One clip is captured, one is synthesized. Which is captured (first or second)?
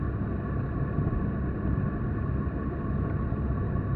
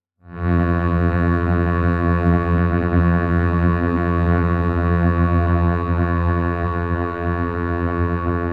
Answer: first